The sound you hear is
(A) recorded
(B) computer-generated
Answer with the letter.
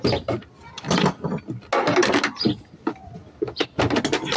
A